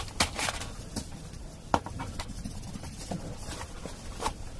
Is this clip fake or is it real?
real